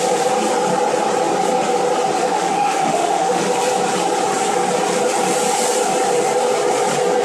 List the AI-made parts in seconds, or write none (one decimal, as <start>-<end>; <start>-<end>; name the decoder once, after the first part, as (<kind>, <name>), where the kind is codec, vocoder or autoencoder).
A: 2.2-3.4 (autoencoder, DAC-VAE)